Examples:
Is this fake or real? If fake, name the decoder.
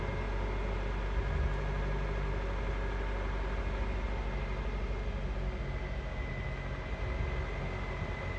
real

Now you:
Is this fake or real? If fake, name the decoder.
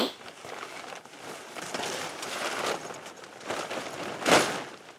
real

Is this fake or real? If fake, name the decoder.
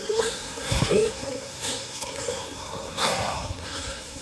fake, codec, SNAC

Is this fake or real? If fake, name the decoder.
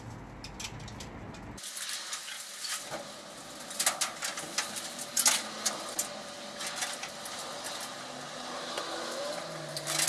real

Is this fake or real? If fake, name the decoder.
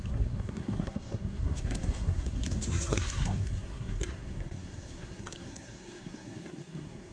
fake, codec, SNAC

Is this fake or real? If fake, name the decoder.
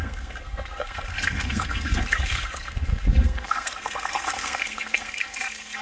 fake, codec, SNAC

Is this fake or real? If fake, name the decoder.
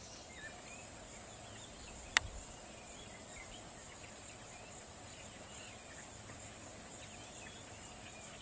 real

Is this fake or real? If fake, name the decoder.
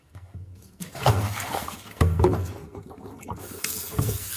fake, codec, SNAC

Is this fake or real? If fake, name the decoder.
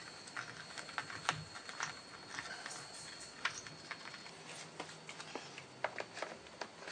real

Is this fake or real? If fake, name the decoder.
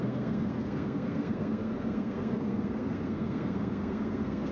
fake, codec, SNAC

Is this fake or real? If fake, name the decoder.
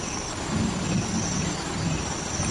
real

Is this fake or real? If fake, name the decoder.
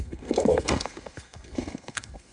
fake, codec, SNAC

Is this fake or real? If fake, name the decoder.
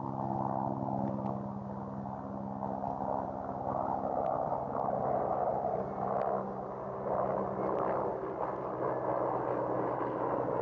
real